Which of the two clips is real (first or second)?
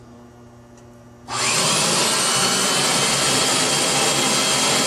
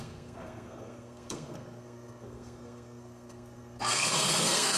first